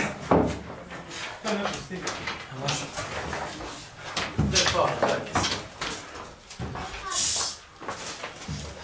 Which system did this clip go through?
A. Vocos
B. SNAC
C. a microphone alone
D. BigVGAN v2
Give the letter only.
C